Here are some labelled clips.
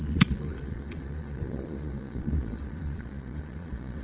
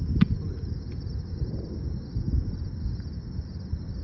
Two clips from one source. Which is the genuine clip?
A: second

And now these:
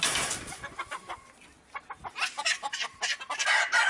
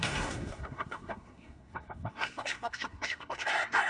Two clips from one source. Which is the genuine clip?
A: first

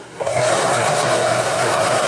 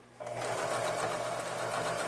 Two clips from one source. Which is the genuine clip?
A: second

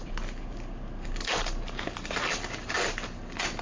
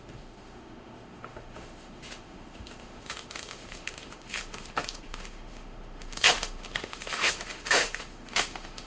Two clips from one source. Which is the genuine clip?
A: first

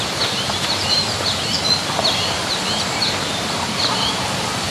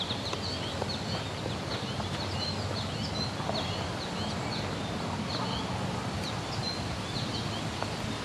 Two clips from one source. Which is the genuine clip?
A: second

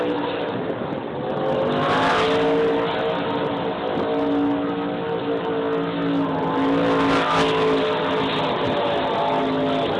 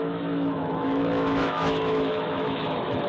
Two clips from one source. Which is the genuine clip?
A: first